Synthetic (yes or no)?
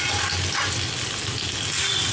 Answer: no